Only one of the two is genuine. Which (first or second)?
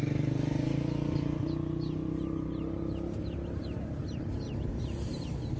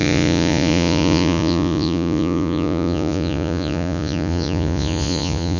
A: first